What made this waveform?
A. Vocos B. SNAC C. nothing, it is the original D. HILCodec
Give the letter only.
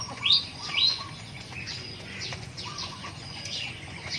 A